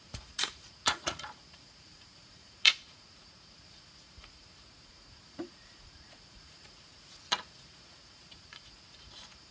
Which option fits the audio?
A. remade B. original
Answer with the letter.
A